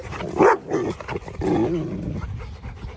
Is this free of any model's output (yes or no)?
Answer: yes